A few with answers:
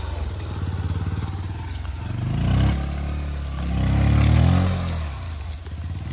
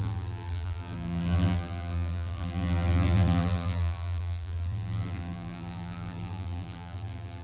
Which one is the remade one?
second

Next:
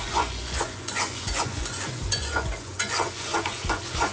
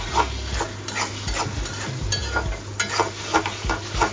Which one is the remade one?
first